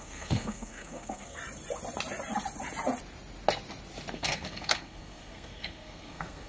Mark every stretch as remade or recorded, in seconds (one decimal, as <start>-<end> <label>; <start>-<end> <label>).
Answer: 0.0-1.4 remade; 1.4-4.1 recorded; 4.1-6.5 remade